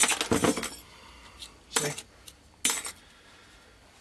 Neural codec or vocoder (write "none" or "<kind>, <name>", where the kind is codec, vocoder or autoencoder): none